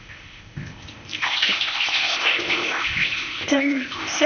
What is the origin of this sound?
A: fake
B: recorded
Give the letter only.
A